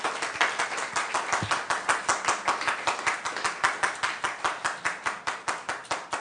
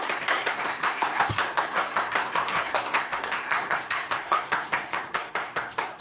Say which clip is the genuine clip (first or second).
first